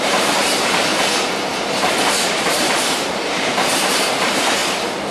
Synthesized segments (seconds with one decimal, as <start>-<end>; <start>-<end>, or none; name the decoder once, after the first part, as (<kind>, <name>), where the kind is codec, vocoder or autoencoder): 0.0-4.6 (vocoder, BigVGAN v2)